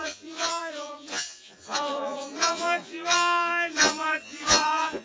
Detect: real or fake fake